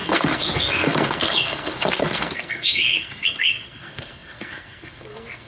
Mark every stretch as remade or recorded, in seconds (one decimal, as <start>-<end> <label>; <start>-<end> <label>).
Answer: 0.0-5.5 remade